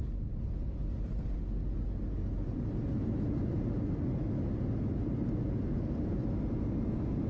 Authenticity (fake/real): real